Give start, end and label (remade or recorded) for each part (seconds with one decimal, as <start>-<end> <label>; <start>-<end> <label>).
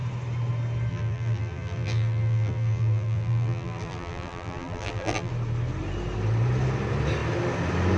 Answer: 0.0-0.9 recorded; 0.9-5.3 remade; 5.3-8.0 recorded